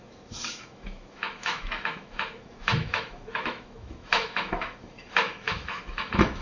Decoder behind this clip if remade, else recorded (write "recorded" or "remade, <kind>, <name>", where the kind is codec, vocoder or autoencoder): remade, autoencoder, DAC-VAE